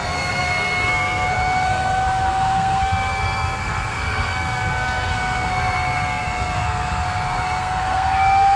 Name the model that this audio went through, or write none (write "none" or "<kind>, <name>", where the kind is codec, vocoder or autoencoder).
codec, SNAC